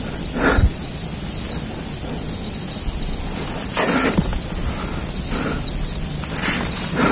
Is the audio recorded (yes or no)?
yes